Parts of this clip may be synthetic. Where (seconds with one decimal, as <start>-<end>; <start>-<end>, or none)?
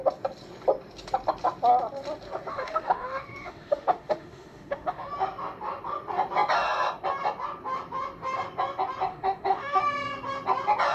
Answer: 2.5-5.1; 9.1-9.8